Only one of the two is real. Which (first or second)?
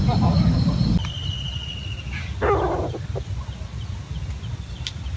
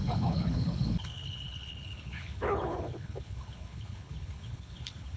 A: first